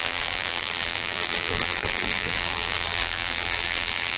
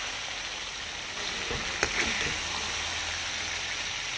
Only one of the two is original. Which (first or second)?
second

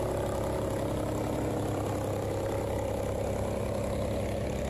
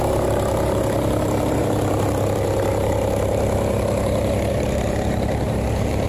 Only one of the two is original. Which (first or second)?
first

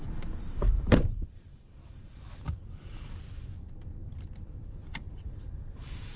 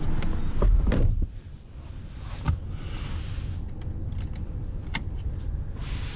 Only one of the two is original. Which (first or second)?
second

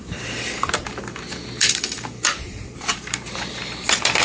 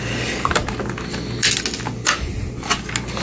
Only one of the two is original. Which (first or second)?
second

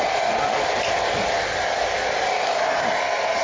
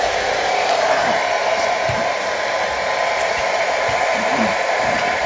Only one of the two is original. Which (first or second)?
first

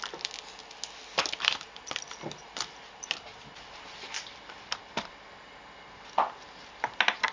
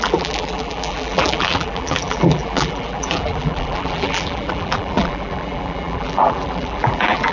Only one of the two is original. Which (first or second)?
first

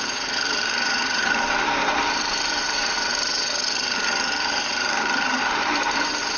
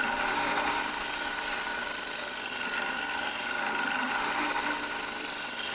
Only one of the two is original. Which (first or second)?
second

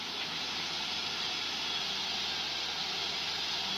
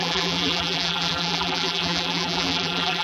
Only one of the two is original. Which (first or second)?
first